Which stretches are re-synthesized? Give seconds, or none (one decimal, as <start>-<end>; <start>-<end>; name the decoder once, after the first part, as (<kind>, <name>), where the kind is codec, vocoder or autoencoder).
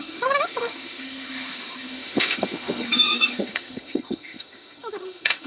0.0-5.5 (autoencoder, DAC-VAE)